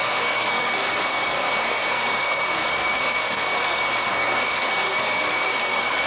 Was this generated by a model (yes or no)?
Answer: yes